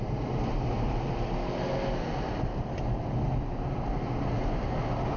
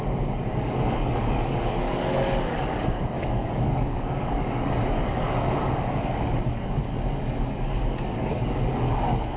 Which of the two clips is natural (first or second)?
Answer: first